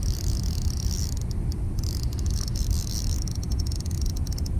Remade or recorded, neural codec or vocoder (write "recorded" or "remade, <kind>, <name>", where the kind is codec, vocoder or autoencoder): recorded